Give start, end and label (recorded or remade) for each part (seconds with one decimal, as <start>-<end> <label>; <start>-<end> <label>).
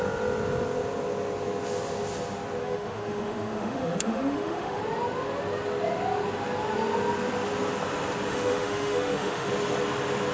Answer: 0.0-2.6 recorded; 2.6-4.8 remade; 4.8-8.3 recorded; 8.3-9.5 remade; 9.5-10.3 recorded